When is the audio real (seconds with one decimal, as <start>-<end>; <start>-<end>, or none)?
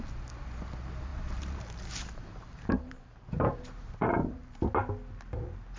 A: 0.0-1.1; 4.6-5.8